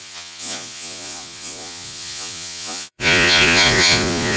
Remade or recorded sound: remade